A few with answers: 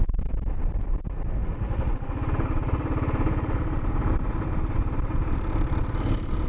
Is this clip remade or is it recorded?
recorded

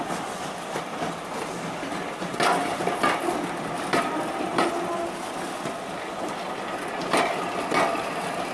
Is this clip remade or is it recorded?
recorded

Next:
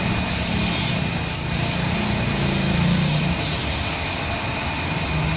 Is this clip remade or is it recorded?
recorded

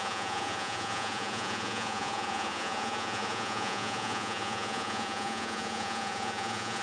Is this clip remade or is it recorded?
remade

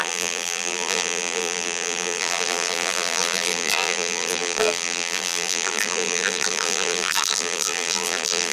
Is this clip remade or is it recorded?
remade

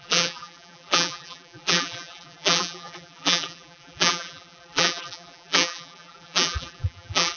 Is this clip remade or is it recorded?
remade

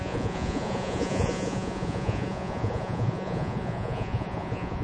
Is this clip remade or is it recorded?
remade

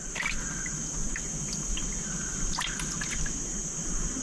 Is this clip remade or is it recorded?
recorded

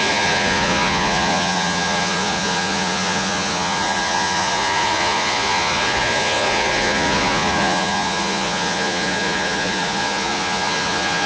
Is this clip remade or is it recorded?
remade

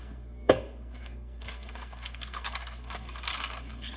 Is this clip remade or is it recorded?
remade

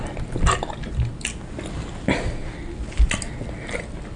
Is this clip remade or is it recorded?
recorded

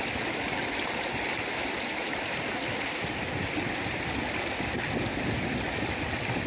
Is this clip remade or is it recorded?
recorded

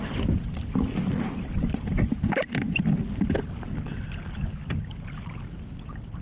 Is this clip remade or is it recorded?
remade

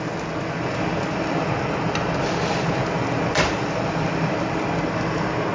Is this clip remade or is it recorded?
recorded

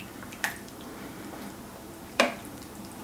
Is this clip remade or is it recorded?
remade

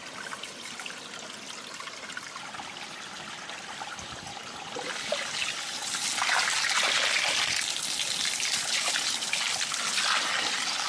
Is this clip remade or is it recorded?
recorded